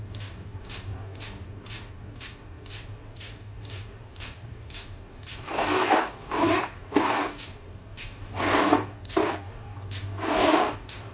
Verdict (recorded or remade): remade